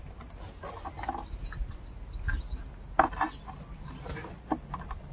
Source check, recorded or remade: recorded